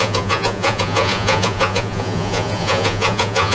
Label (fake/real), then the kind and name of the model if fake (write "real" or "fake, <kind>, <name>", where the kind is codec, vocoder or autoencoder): fake, vocoder, Vocos